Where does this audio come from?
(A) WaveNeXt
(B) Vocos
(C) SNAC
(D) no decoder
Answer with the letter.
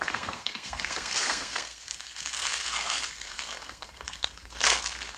C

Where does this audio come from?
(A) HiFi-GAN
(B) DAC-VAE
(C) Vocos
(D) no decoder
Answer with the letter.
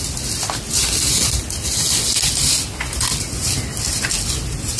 D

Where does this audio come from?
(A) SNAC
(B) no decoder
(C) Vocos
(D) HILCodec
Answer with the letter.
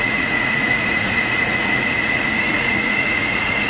C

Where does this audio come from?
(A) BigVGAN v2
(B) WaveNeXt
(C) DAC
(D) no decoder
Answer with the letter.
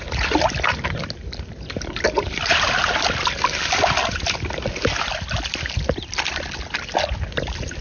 D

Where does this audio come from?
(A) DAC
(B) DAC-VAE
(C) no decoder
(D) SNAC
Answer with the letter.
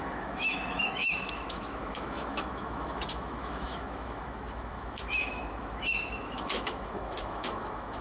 B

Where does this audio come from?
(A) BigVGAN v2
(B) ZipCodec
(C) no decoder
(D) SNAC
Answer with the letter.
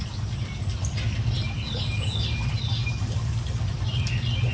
C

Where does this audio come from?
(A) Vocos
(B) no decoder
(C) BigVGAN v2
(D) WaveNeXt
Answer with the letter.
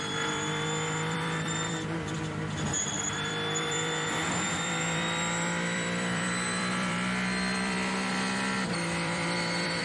C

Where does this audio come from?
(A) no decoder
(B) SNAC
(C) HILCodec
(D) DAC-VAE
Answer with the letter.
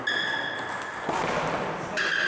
A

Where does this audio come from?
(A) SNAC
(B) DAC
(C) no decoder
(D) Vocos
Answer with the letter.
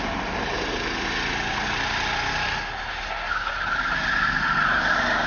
C